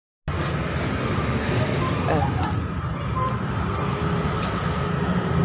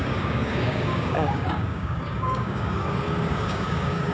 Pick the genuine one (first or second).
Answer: first